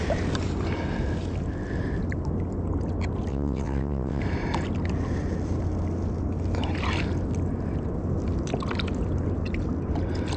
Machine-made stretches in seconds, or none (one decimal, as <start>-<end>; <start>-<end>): 3.3-4.2